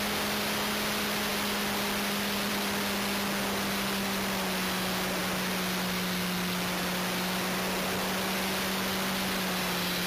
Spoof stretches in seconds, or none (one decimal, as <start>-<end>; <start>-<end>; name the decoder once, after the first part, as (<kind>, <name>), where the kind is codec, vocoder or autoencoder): none